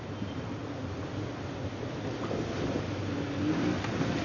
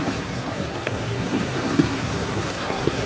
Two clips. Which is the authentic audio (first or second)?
first